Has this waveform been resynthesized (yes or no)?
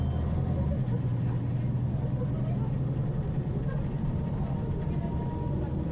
no